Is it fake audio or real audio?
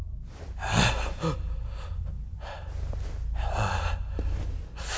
real